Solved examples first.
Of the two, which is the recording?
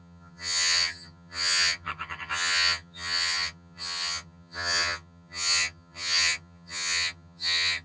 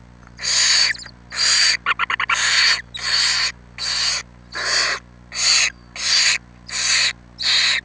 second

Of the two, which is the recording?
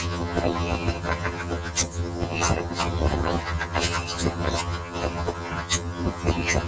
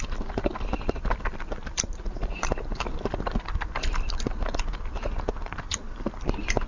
second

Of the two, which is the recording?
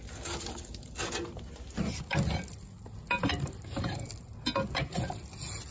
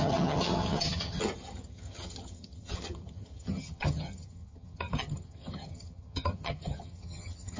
first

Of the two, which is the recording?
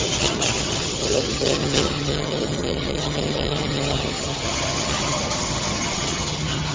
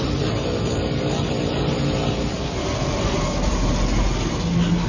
second